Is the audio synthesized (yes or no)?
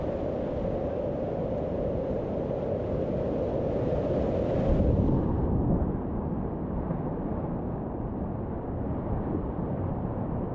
no